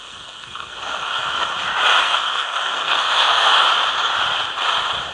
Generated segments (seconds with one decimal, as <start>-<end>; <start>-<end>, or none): 0.0-1.4; 2.0-3.5